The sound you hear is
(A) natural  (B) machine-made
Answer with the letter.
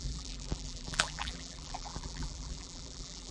B